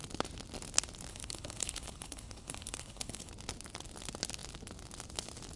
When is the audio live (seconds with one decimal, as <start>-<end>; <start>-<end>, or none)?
0.0-1.1; 3.3-5.6